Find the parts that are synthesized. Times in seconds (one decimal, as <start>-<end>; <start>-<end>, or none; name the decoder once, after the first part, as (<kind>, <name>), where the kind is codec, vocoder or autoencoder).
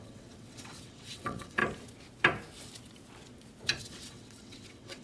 0.0-1.6 (vocoder, WaveNeXt); 3.8-5.0